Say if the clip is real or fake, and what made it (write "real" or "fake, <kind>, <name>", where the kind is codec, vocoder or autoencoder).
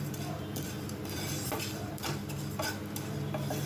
fake, vocoder, BigVGAN v2